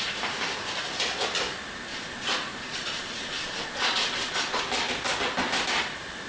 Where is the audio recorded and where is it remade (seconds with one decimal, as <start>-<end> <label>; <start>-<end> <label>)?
0.0-1.9 recorded; 1.9-4.6 remade; 4.6-6.3 recorded